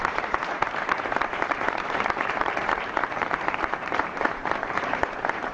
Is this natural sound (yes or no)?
no